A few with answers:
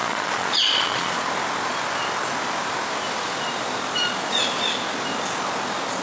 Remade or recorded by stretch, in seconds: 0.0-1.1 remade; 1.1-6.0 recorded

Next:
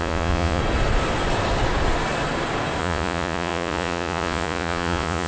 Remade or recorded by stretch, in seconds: 0.0-0.6 remade; 0.6-2.8 recorded; 2.8-5.3 remade

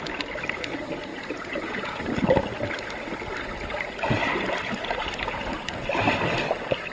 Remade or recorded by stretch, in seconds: 0.0-1.1 recorded; 1.1-2.0 remade; 2.0-6.9 recorded

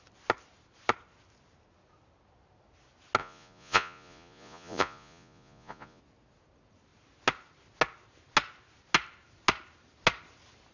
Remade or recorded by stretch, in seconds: 0.0-3.2 recorded; 3.2-6.0 remade; 6.0-10.7 recorded

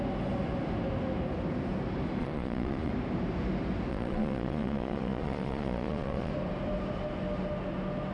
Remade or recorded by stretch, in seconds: 0.0-2.2 recorded; 2.2-2.9 remade; 2.9-3.9 recorded; 3.9-6.3 remade; 6.3-8.1 recorded

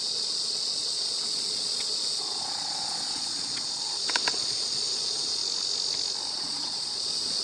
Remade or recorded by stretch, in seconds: 0.0-5.4 remade; 5.4-6.3 recorded; 6.3-7.4 remade

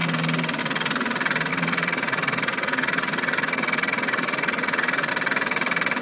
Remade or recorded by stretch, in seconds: 0.0-1.5 recorded; 1.5-5.1 remade; 5.1-6.0 recorded